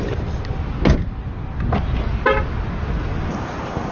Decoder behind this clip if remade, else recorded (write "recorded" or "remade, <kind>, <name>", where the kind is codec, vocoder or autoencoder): recorded